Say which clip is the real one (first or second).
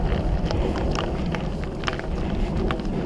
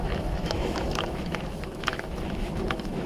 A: first